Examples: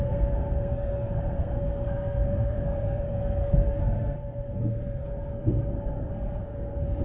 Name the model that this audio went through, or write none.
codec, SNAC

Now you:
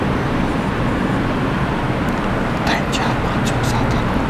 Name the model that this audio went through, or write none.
none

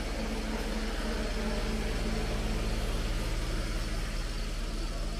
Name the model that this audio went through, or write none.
none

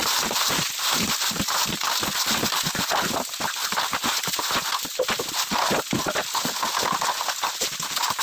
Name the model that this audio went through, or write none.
none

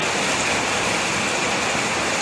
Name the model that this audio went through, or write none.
none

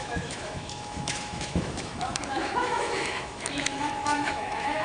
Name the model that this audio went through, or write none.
autoencoder, DAC-VAE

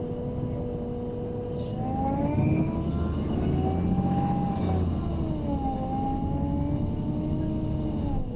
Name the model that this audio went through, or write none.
none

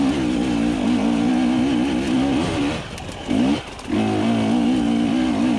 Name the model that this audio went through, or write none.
none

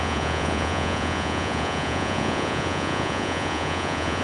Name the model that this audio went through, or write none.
vocoder, Vocos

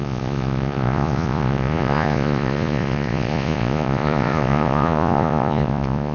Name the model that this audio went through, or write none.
vocoder, Vocos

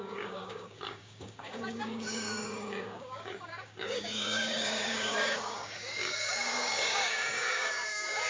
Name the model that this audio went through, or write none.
codec, DAC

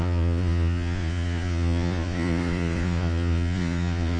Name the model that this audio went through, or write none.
vocoder, Vocos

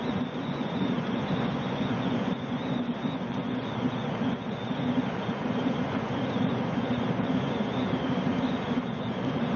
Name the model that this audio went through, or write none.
vocoder, Vocos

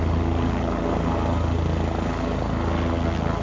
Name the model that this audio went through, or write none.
none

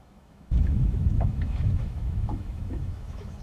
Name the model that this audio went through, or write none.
autoencoder, DAC-VAE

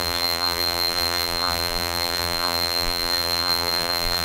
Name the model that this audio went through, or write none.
vocoder, BigVGAN v2